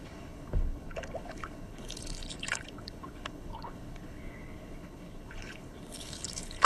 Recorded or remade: remade